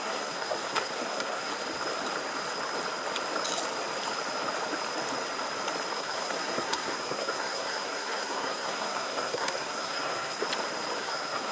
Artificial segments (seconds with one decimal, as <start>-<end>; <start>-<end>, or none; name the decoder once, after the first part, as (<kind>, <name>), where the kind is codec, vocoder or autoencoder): 0.0-1.5 (codec, SNAC); 5.9-10.4; 11.0-11.5